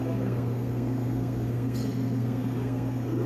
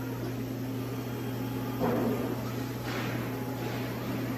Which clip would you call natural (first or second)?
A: second